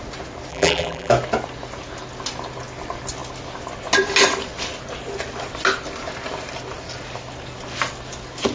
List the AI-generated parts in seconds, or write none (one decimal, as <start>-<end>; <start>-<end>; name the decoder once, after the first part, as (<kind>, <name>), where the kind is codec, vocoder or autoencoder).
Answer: 0.5-1.1 (vocoder, BigVGAN v2)